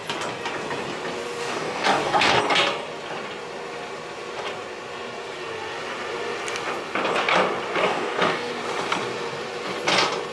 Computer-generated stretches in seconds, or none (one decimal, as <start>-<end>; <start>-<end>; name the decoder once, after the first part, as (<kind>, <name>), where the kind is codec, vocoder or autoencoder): 1.4-2.4 (codec, DAC); 7.8-8.5